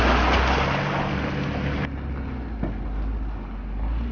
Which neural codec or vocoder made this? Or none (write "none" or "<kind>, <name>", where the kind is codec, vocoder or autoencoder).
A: none